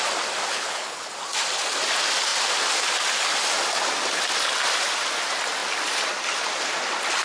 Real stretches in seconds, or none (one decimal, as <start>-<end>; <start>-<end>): 0.0-0.5; 1.1-7.2